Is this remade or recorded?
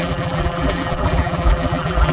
remade